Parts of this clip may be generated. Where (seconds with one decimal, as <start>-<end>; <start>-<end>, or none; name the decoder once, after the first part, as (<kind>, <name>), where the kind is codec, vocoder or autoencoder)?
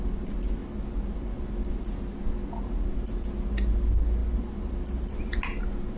none